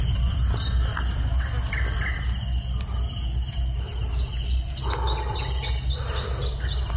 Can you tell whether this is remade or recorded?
recorded